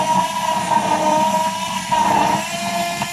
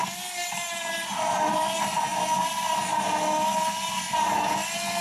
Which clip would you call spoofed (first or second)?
first